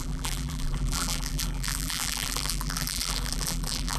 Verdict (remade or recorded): remade